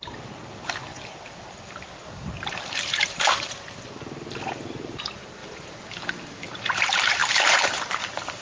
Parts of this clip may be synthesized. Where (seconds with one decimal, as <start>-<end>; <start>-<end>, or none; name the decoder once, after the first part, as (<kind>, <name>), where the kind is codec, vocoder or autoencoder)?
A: 0.9-5.0 (vocoder, BigVGAN v2); 7.2-8.4